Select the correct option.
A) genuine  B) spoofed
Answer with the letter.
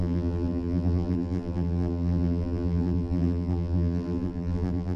B